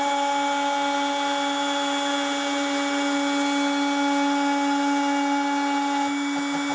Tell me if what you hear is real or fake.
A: real